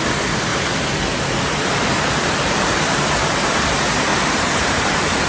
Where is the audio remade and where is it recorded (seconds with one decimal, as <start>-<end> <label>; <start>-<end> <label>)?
0.0-5.3 recorded